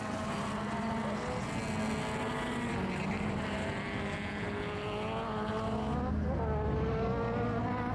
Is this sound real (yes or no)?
yes